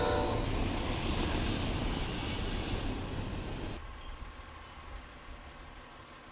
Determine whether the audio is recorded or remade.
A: recorded